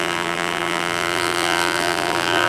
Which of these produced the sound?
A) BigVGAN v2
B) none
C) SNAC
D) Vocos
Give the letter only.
A